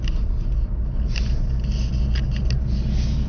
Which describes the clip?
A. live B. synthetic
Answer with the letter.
A